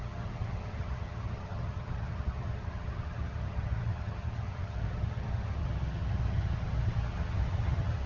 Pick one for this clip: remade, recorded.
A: remade